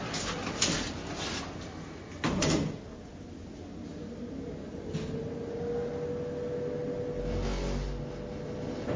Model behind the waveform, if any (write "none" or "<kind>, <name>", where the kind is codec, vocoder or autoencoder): none